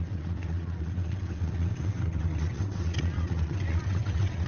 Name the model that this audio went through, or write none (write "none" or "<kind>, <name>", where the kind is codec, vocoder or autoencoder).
vocoder, WaveNeXt